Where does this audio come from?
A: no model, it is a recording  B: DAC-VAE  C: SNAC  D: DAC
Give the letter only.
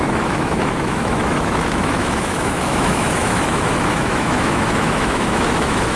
B